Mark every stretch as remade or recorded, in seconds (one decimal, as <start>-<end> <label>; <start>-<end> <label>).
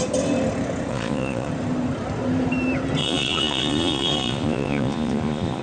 0.0-0.9 recorded; 0.9-1.5 remade; 1.5-3.0 recorded; 3.0-5.6 remade